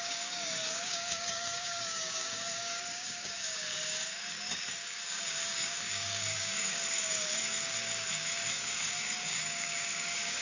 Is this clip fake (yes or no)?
yes